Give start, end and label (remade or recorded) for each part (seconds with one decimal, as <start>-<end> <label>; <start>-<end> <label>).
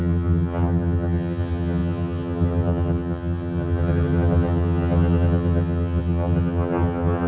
0.0-7.3 remade